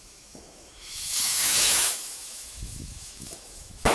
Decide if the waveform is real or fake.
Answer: fake